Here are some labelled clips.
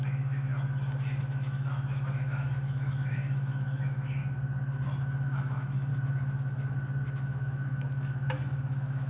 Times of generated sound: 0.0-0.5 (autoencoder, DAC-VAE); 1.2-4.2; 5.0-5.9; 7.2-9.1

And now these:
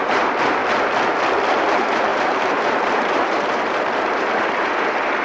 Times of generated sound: 0.0-0.6 (vocoder, BigVGAN v2); 1.7-5.2

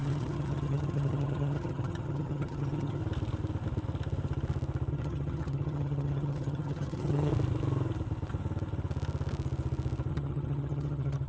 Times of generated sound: 0.0-3.0 (vocoder, HiFi-GAN); 4.9-7.3; 10.1-11.3

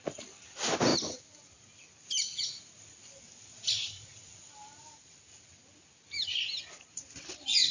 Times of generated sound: 0.9-2.4 (vocoder, BigVGAN v2)

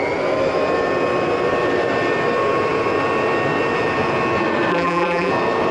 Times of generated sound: 4.7-5.3 (vocoder, BigVGAN v2)

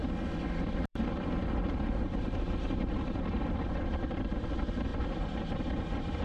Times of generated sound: 0.9-6.2 (vocoder, BigVGAN v2)